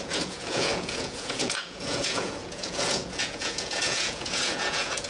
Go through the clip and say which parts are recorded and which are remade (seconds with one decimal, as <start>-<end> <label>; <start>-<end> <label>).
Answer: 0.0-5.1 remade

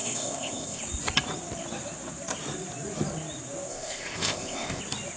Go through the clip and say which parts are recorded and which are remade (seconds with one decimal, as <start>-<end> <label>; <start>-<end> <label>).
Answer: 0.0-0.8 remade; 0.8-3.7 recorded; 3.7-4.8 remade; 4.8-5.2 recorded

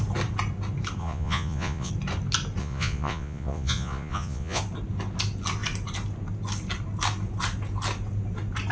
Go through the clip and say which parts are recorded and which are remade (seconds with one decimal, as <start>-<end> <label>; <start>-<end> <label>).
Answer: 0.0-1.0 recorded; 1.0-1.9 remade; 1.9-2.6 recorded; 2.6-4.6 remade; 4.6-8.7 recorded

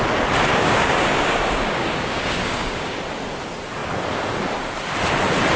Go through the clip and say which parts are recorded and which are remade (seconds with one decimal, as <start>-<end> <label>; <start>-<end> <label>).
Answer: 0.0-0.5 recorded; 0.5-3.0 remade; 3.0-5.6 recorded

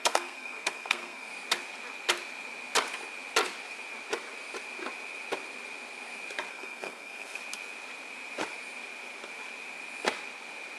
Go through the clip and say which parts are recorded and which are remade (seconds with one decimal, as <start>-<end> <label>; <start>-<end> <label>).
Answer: 0.0-1.3 remade; 1.3-6.5 recorded; 6.5-7.4 remade; 7.4-10.8 recorded